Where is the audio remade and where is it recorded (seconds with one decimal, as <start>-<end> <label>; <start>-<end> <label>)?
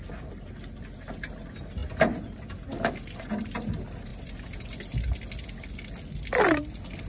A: 0.0-7.1 recorded